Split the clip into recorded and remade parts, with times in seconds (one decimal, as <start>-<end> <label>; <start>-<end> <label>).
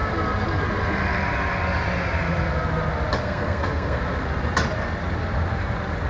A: 0.0-3.2 recorded; 3.2-4.0 remade; 4.0-6.1 recorded